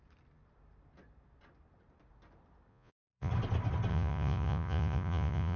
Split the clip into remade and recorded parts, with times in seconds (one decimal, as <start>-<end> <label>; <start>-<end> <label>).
0.0-2.7 recorded; 2.7-3.3 remade; 3.3-3.9 recorded; 3.9-5.6 remade